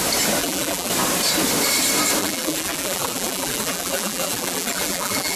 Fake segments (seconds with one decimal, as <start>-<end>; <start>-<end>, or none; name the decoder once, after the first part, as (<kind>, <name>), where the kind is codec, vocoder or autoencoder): 0.4-0.9 (vocoder, BigVGAN v2); 2.2-5.4